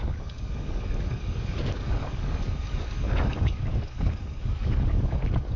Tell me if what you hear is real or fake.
fake